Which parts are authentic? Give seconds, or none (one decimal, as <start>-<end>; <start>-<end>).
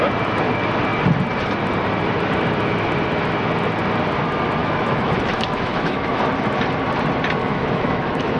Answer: 0.0-4.6; 6.2-7.4